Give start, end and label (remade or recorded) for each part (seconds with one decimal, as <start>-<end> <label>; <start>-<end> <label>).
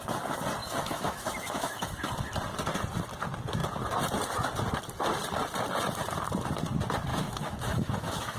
0.0-0.6 recorded; 0.6-2.1 remade; 2.1-7.1 recorded; 7.1-8.4 remade